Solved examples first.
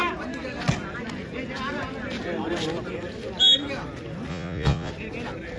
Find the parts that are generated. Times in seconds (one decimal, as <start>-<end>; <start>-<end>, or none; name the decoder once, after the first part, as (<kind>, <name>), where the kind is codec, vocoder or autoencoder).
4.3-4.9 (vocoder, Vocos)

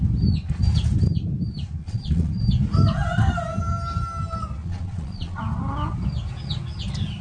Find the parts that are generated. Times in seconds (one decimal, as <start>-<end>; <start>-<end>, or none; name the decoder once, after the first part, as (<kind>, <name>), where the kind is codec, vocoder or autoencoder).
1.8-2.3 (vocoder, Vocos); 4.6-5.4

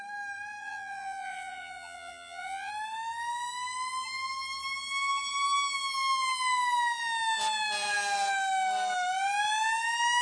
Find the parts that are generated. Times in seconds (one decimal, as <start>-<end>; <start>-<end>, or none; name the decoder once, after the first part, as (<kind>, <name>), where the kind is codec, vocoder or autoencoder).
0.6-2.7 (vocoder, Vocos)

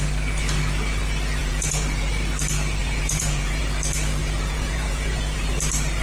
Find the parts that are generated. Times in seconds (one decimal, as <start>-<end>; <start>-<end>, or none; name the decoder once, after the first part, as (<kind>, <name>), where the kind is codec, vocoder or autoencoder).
1.4-2.1 (vocoder, Vocos); 2.8-3.6; 4.2-5.5

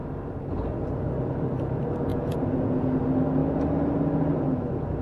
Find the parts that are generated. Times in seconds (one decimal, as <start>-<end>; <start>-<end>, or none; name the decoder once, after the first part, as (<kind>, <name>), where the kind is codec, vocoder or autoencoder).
2.1-3.0 (vocoder, Vocos)

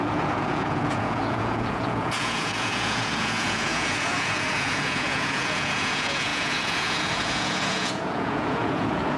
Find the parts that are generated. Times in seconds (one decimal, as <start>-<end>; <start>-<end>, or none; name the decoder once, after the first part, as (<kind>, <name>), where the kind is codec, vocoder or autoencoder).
0.0-9.2 (vocoder, Vocos)

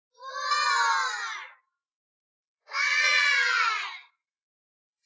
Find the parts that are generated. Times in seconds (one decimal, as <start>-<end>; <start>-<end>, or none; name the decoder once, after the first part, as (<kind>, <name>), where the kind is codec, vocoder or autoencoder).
1.9-5.1 (vocoder, Vocos)